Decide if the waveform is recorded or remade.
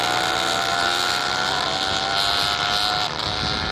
recorded